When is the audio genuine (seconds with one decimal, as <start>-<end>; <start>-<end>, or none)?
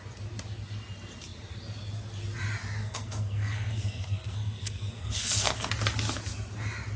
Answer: 0.0-2.8; 5.7-7.0